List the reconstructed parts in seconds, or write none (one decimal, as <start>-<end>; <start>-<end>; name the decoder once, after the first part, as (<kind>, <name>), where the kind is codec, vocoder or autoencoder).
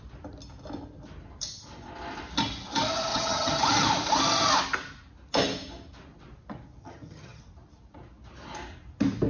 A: 3.1-3.6 (vocoder, HiFi-GAN); 6.8-7.4